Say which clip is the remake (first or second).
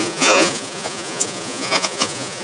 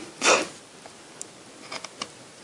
first